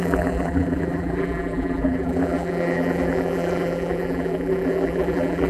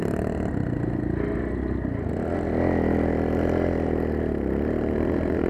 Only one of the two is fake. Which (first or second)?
first